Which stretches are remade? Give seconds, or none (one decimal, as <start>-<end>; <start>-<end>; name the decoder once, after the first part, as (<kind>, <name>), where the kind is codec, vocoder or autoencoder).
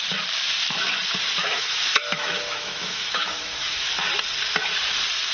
1.4-3.9 (autoencoder, DAC-VAE)